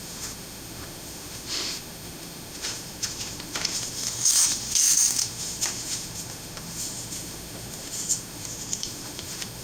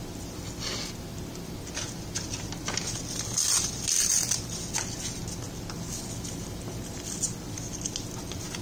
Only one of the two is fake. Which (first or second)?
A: first